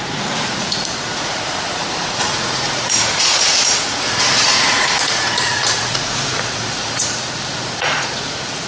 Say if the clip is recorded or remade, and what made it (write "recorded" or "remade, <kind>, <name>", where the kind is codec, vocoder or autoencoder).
remade, vocoder, Vocos